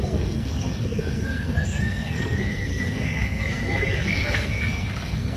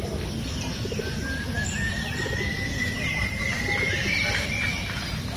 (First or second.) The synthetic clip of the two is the first